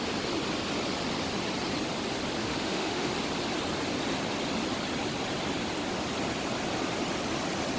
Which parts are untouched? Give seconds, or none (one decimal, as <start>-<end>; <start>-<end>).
0.0-2.4; 3.1-7.8

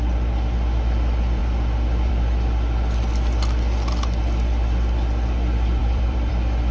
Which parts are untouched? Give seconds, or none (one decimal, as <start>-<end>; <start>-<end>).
0.0-5.8; 6.3-6.7

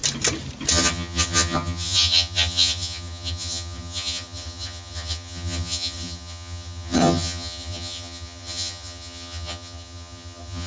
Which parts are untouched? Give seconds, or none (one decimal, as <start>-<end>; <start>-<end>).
0.0-0.7

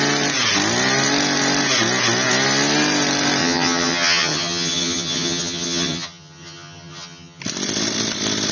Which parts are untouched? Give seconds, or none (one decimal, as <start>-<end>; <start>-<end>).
0.0-3.4; 7.4-8.5

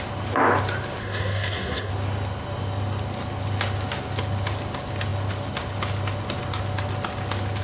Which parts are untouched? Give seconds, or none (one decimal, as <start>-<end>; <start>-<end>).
0.0-1.0; 1.9-7.6